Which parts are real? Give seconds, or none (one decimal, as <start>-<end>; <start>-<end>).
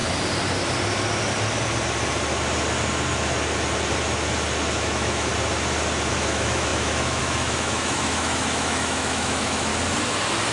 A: 0.0-4.7; 5.3-6.1; 9.7-10.5